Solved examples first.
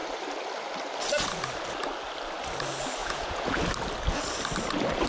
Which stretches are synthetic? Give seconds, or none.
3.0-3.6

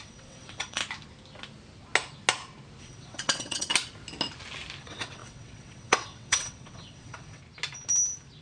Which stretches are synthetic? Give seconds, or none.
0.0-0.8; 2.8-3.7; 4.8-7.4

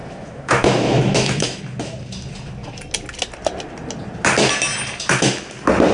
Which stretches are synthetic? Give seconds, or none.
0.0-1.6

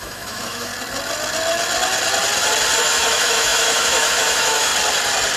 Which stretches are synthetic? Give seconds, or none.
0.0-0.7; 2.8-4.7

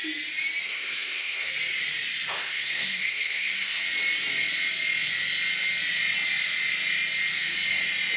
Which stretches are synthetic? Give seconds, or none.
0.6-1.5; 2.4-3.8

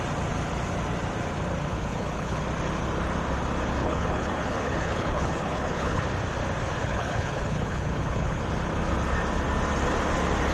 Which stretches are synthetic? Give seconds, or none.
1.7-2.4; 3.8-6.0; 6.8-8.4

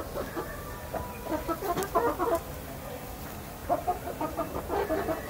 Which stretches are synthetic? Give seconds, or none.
3.6-4.6